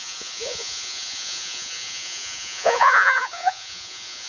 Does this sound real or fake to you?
fake